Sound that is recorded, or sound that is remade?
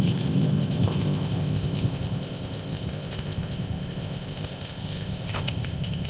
remade